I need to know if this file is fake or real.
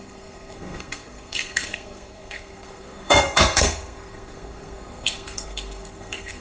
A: fake